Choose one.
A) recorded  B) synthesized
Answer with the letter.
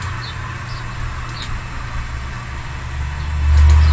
A